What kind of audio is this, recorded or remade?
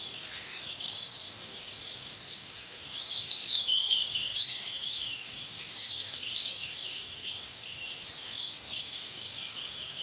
remade